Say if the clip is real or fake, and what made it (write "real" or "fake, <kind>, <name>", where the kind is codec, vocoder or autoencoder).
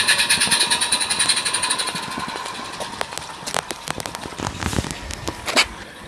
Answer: real